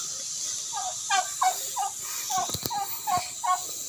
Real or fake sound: real